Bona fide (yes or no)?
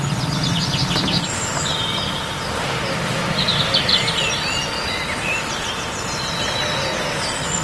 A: yes